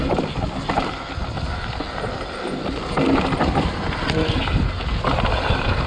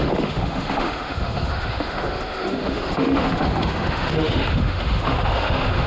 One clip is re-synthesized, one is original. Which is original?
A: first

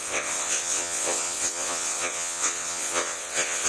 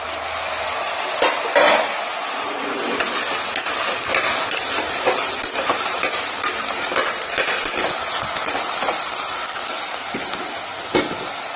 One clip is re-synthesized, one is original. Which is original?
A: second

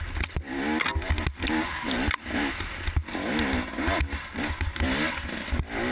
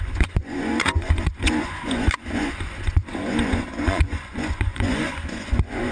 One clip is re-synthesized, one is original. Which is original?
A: first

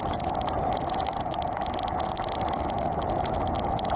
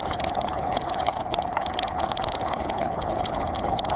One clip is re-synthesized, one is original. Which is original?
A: first